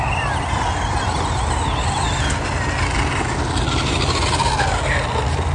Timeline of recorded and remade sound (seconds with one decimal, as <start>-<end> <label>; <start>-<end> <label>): 0.0-5.5 recorded